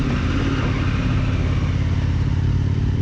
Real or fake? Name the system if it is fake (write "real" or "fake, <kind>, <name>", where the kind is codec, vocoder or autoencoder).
real